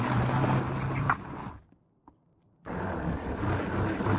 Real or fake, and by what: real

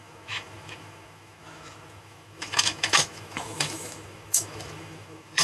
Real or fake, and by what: fake, autoencoder, DAC-VAE